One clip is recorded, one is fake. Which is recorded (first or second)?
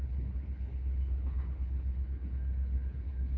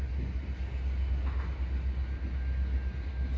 second